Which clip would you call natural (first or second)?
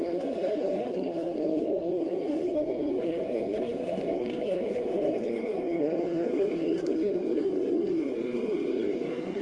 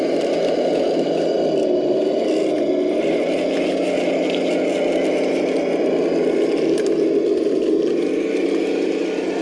second